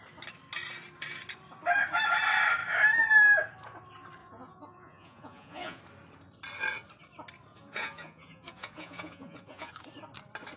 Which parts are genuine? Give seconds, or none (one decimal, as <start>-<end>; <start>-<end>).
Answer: 0.0-4.2; 5.8-7.5; 9.7-10.6